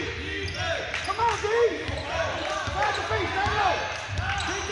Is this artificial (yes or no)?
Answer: no